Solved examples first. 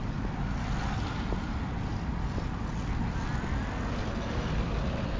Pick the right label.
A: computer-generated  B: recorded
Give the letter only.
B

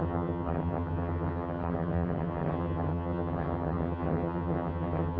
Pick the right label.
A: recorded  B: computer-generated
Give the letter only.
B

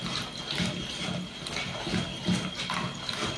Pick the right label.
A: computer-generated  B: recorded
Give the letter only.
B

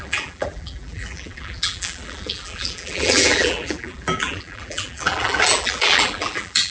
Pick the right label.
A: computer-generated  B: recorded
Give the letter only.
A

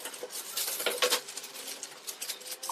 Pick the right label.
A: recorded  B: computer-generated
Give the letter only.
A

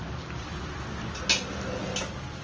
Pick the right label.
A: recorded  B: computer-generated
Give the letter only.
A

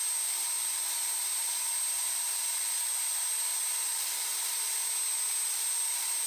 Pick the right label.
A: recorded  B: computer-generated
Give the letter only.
A